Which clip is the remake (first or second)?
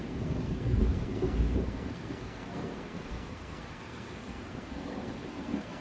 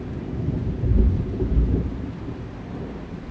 first